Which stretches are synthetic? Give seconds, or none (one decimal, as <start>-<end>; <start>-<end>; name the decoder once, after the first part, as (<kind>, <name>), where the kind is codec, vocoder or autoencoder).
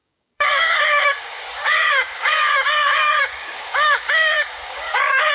0.0-5.3 (codec, DAC)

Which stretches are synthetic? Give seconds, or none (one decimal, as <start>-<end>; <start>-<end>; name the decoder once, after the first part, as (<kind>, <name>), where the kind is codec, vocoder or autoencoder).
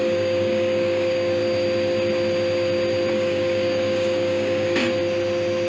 0.0-1.4 (codec, DAC); 3.1-4.8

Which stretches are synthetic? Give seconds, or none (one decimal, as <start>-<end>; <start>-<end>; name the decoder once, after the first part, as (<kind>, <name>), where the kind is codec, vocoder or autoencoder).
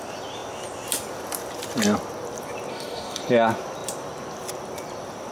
2.7-3.2 (codec, DAC)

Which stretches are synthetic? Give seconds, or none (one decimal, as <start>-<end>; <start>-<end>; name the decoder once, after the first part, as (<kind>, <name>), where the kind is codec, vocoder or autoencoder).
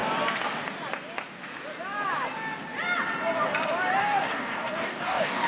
4.0-5.5 (codec, DAC)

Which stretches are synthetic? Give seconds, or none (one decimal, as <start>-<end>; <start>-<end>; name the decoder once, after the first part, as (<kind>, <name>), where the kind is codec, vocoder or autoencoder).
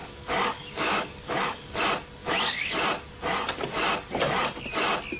0.0-1.8 (codec, DAC); 2.2-2.7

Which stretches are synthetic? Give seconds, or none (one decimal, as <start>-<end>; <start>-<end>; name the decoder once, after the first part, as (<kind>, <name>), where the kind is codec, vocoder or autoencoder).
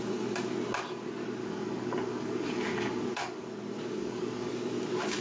1.4-3.5 (codec, DAC); 4.0-4.5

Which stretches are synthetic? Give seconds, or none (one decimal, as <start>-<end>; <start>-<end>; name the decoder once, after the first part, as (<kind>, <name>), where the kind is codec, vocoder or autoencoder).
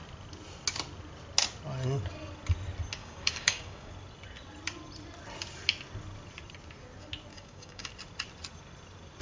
3.0-3.9 (codec, DAC); 7.3-7.9